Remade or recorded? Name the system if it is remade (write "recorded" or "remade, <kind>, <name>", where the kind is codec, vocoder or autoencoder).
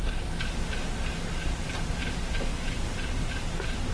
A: recorded